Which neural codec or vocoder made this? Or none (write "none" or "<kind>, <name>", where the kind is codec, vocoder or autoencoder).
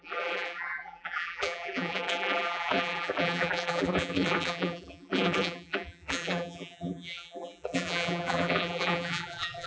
vocoder, BigVGAN v2